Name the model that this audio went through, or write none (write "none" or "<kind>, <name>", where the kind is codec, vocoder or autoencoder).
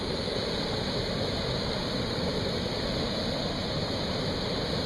none